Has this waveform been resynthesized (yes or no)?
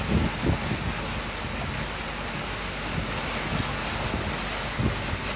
no